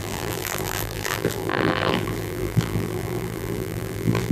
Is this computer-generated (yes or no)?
yes